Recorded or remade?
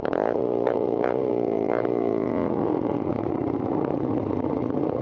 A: remade